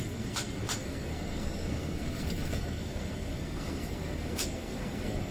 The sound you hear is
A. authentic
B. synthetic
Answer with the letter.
B